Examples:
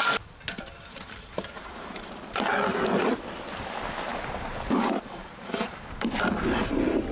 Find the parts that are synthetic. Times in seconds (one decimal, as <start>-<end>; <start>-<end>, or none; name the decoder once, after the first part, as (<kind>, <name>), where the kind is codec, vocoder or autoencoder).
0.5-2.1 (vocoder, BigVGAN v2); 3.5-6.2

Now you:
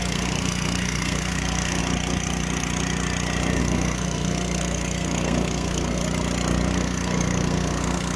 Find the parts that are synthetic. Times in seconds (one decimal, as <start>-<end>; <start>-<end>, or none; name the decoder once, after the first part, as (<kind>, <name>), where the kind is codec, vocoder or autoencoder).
0.0-1.8 (codec, SNAC); 3.6-6.0; 6.7-8.2

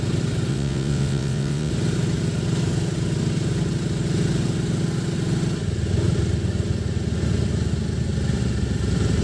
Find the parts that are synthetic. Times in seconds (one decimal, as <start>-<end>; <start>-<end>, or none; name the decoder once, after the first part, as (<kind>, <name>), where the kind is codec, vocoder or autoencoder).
0.5-1.7 (vocoder, WaveNeXt)

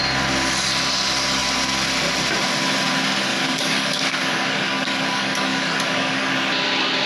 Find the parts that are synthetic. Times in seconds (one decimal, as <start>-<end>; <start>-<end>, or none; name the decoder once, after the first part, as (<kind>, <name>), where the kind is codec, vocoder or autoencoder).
3.3-6.3 (codec, DAC)